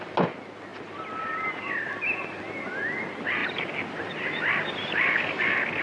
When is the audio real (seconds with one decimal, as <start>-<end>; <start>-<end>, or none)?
0.0-5.8